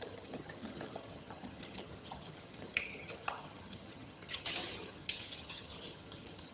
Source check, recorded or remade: remade